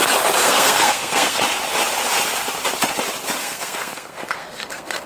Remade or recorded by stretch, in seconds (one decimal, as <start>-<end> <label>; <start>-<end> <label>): 0.0-0.4 recorded; 0.4-1.4 remade; 1.4-3.4 recorded; 3.4-5.1 remade